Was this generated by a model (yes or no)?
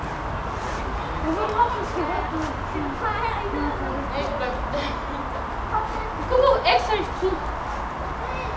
no